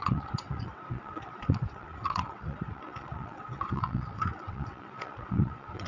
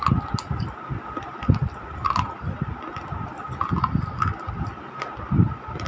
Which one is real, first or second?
second